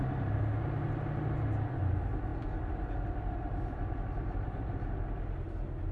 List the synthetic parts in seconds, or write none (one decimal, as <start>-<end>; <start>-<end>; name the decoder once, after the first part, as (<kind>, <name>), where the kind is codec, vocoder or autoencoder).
2.3-4.9 (vocoder, BigVGAN v2)